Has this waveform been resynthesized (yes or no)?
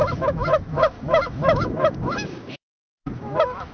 yes